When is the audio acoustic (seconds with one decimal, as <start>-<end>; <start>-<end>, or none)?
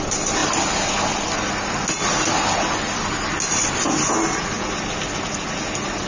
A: 0.0-6.1